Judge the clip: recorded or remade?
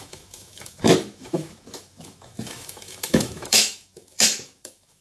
remade